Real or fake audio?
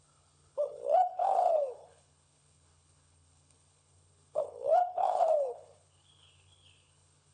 fake